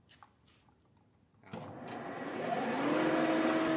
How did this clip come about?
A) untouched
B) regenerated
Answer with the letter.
A